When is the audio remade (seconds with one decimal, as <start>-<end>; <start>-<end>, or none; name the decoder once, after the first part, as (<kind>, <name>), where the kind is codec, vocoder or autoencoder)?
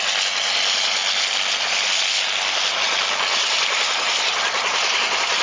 3.3-5.4 (vocoder, BigVGAN v2)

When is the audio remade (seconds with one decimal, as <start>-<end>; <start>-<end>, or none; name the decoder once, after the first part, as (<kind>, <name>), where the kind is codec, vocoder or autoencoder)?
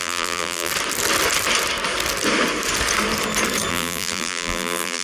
0.0-0.7 (vocoder, BigVGAN v2); 3.7-5.0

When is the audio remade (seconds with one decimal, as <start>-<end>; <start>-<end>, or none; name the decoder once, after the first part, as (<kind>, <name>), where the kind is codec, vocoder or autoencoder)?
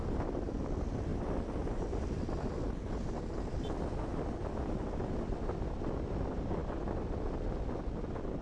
1.1-2.1 (vocoder, BigVGAN v2); 4.1-5.1; 6.6-7.2